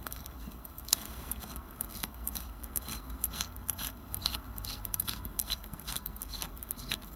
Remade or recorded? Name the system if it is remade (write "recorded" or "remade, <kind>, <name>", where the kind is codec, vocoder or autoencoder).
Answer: remade, codec, SNAC